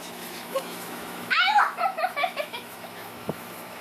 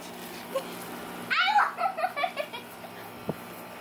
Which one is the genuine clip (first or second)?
second